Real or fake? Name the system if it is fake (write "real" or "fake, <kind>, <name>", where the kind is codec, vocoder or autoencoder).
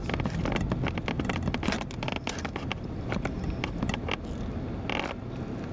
real